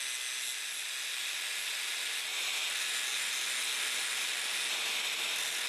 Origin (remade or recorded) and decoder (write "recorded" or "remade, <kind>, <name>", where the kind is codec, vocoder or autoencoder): recorded